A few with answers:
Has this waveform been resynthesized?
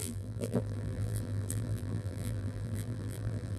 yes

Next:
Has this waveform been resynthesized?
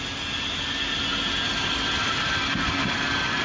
no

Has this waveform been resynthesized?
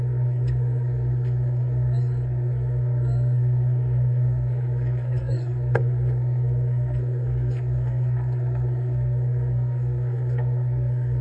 yes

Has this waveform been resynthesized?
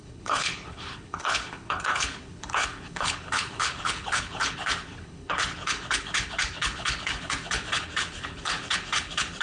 yes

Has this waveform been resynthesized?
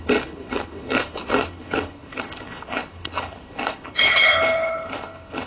yes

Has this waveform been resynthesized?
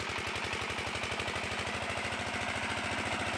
no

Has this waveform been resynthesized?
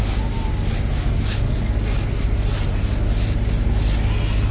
no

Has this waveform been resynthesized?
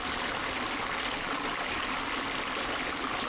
no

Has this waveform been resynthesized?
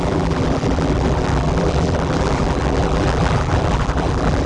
yes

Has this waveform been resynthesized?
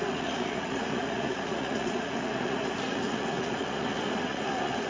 yes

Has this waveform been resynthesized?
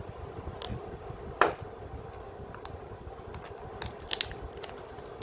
no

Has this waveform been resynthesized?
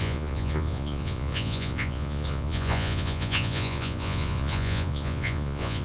yes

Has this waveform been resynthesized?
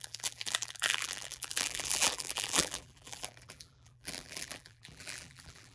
yes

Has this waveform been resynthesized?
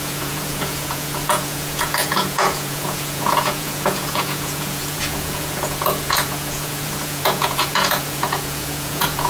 yes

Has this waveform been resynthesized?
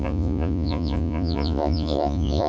yes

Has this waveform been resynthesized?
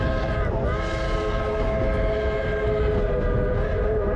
no